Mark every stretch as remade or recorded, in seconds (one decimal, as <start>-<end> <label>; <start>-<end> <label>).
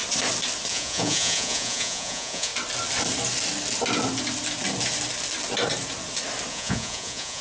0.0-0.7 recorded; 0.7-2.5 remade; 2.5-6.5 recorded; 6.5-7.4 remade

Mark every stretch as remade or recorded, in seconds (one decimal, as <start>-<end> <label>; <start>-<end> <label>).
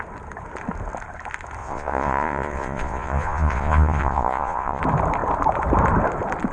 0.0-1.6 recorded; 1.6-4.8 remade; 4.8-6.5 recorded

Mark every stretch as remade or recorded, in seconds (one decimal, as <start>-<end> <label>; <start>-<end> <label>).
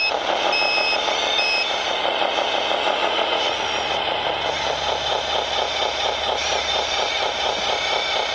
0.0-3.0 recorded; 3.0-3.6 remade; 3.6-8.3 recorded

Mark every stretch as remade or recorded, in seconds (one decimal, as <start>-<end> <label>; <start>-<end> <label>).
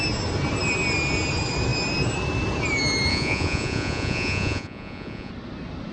0.0-3.1 recorded; 3.1-5.3 remade; 5.3-5.9 recorded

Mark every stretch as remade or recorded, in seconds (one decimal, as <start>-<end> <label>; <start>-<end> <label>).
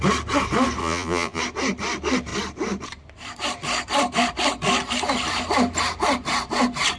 0.0-0.8 recorded; 0.8-1.4 remade; 1.4-7.0 recorded